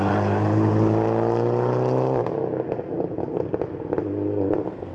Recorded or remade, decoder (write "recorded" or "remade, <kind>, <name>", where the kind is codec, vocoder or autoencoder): recorded